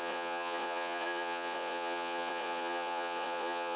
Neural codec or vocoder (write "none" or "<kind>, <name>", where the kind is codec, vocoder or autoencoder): vocoder, Vocos